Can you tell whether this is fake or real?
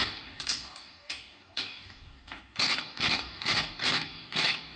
fake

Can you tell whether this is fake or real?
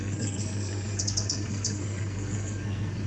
fake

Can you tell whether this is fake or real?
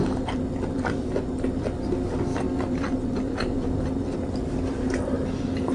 fake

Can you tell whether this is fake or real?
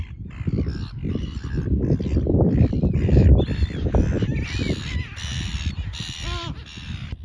fake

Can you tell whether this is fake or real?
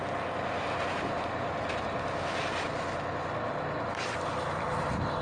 real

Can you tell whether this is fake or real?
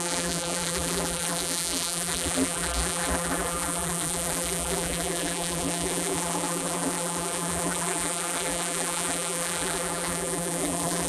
fake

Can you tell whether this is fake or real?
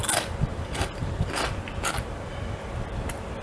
fake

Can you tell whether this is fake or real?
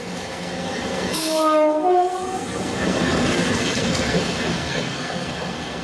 fake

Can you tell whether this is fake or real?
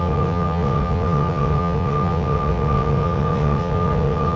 fake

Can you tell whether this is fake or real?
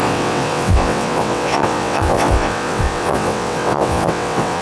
fake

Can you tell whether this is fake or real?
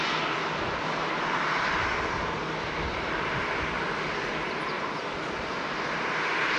real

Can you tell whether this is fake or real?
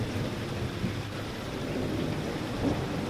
real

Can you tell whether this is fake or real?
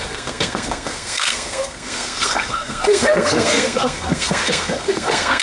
fake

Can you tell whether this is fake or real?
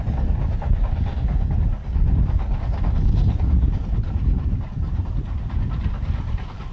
real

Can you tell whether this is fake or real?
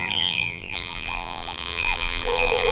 fake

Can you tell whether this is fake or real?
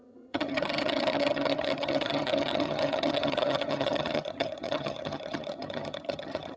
fake